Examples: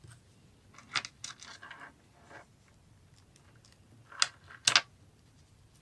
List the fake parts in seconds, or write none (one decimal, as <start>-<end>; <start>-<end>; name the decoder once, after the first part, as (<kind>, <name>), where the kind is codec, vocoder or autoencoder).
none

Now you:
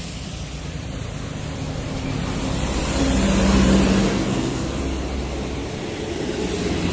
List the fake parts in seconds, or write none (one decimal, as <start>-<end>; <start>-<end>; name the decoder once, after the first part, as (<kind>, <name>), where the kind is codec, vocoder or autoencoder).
4.1-4.8 (codec, SNAC)

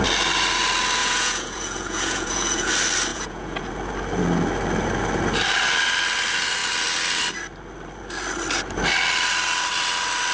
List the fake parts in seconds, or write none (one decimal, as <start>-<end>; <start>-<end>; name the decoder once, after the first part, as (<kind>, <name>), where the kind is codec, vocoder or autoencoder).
1.0-2.7 (vocoder, Vocos); 3.1-3.7

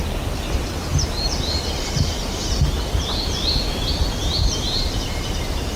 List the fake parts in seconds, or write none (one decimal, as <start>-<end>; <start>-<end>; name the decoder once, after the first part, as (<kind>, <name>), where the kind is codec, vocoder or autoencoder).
0.0-0.9 (vocoder, BigVGAN v2); 4.4-5.8

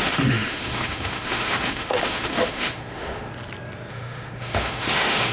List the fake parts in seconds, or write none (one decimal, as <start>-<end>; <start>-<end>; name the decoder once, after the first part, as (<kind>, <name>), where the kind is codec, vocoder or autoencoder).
0.0-3.3 (autoencoder, DAC-VAE); 3.9-5.3

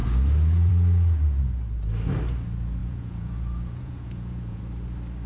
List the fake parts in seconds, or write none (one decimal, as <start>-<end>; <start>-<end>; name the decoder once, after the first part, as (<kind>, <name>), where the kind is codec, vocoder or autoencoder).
2.8-4.6 (vocoder, Vocos)